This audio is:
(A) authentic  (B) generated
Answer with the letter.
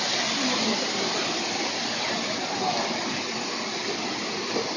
A